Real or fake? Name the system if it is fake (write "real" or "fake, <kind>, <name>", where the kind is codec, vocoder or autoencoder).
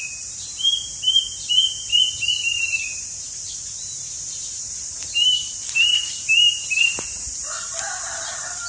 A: fake, vocoder, BigVGAN v2